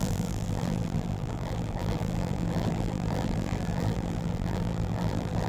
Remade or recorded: remade